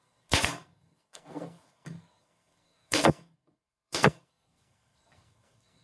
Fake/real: fake